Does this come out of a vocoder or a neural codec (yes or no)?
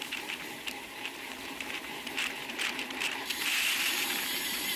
yes